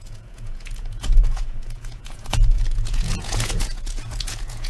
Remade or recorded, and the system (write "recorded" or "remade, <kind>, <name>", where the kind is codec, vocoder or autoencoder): remade, vocoder, Vocos